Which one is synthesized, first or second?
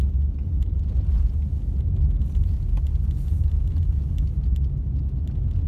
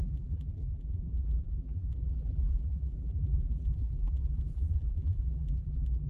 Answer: second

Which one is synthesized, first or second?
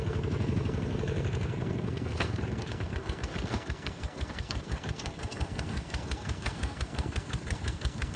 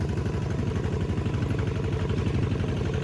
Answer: first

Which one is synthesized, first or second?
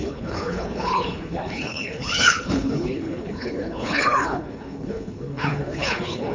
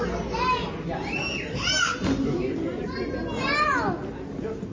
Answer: first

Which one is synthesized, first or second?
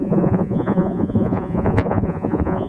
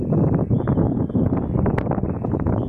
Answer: first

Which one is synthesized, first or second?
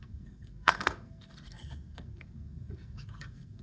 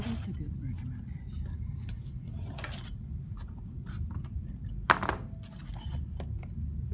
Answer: first